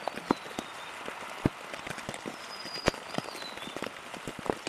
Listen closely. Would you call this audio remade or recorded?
recorded